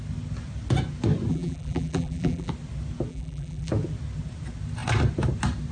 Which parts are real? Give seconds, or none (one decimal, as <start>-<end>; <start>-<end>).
0.0-1.3; 2.5-3.1; 3.7-5.7